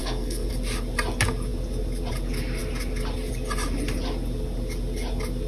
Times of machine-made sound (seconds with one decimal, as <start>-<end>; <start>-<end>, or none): 0.0-0.5